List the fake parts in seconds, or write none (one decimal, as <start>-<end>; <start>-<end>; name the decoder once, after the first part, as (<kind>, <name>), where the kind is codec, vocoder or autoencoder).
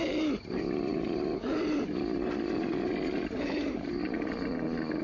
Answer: none